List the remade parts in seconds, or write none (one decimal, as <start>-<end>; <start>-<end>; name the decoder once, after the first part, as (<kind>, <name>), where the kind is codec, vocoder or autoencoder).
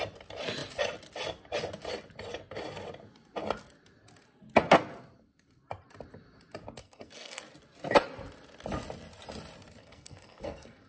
6.8-7.4 (codec, SNAC); 9.8-10.9